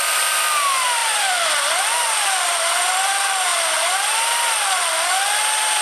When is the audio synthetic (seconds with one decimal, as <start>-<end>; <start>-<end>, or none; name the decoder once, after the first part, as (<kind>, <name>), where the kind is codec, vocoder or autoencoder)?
1.0-3.1 (vocoder, BigVGAN v2)